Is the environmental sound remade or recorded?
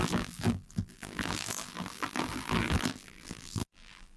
remade